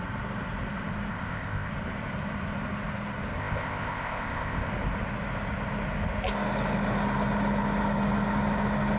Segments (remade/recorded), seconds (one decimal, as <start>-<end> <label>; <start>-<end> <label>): 0.0-1.1 recorded; 1.1-1.7 remade; 1.7-3.4 recorded; 3.4-4.7 remade; 4.7-9.0 recorded

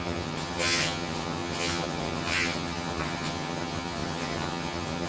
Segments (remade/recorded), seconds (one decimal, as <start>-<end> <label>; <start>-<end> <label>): 0.0-5.1 remade

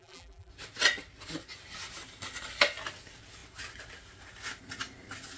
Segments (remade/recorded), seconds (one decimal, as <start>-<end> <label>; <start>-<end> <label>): 0.0-0.5 remade; 0.5-5.4 recorded